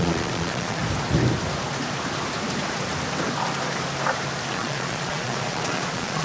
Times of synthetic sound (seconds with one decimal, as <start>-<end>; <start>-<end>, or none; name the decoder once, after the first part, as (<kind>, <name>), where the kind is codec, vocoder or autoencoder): 0.0-0.8 (vocoder, Vocos); 4.5-6.2